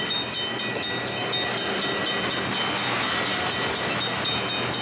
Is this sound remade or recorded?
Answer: recorded